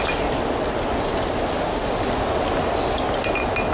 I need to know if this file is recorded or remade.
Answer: recorded